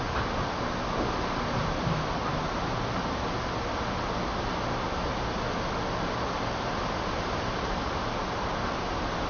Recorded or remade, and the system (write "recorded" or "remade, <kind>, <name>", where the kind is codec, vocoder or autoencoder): recorded